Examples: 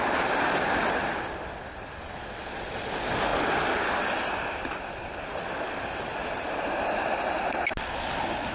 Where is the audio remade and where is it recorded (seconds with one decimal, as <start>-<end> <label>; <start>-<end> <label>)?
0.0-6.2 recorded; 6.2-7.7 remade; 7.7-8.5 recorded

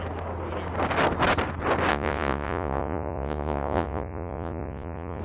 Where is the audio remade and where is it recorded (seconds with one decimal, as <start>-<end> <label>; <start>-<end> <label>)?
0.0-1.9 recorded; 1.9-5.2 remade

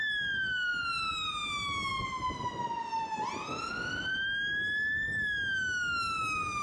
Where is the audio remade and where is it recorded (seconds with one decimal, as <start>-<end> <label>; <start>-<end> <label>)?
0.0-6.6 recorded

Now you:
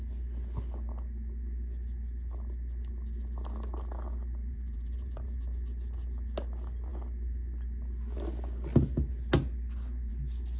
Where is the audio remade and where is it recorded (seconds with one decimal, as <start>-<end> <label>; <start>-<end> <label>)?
0.0-4.4 recorded; 4.4-5.4 remade; 5.4-10.6 recorded

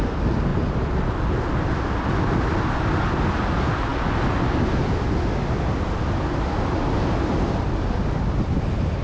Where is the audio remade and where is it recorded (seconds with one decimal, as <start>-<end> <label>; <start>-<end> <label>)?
0.0-9.0 recorded

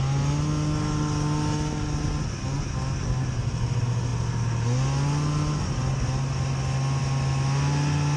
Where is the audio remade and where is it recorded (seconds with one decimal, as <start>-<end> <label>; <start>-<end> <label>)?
0.0-8.2 recorded

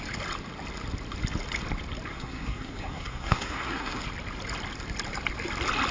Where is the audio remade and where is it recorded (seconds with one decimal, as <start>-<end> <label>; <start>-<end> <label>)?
0.0-2.1 recorded; 2.1-4.0 remade; 4.0-5.9 recorded